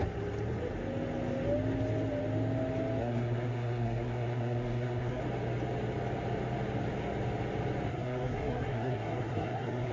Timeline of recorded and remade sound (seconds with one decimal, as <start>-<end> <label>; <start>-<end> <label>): 0.0-3.0 recorded; 3.0-5.2 remade; 5.2-7.9 recorded; 7.9-9.9 remade